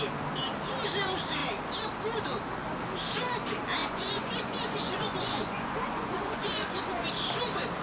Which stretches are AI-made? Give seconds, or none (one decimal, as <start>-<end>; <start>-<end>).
3.8-7.1